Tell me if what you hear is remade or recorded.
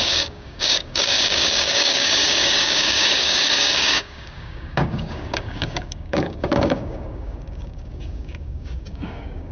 remade